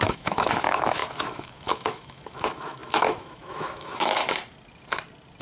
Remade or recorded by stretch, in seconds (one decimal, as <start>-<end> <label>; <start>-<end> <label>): 0.0-4.2 remade; 4.2-5.4 recorded